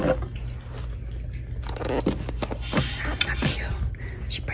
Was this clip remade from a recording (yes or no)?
no